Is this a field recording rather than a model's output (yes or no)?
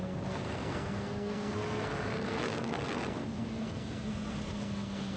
no